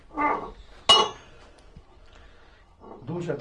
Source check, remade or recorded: recorded